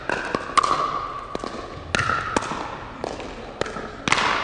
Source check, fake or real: real